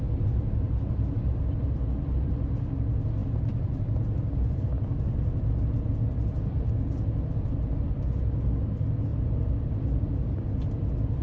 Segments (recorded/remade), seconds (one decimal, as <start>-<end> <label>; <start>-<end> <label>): 0.0-9.1 recorded; 9.1-9.6 remade; 9.6-11.2 recorded